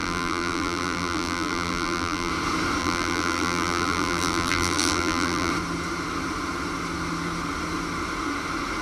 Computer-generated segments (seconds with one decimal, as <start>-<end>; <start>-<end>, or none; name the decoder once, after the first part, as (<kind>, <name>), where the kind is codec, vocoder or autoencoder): 0.0-2.3 (vocoder, BigVGAN v2); 2.8-5.5